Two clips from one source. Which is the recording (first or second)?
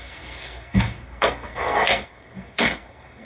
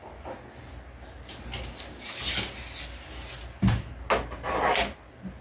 second